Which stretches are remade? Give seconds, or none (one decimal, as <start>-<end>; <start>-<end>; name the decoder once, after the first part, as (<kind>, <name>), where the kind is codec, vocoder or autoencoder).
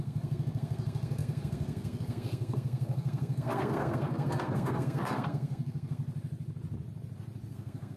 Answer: 0.0-6.0 (codec, SNAC); 7.5-8.0